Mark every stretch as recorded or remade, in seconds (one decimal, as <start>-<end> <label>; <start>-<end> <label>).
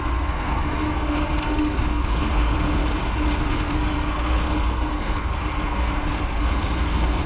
0.0-2.8 remade; 2.8-3.4 recorded; 3.4-7.3 remade